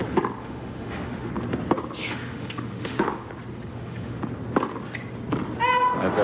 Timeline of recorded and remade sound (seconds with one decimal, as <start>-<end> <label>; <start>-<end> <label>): 0.0-0.4 recorded; 0.4-1.3 remade; 1.3-2.0 recorded; 2.0-3.3 remade; 3.3-3.7 recorded; 3.7-4.2 remade; 4.2-6.2 recorded